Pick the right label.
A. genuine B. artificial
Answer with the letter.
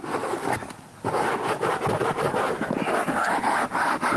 A